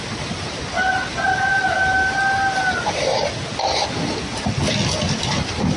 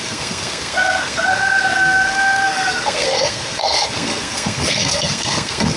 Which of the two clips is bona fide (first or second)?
first